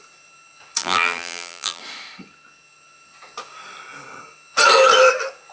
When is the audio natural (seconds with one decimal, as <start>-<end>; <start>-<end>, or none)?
0.0-0.8; 1.8-5.5